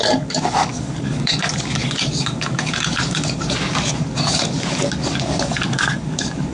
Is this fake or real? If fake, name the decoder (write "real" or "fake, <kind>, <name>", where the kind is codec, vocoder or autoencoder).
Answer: fake, codec, DAC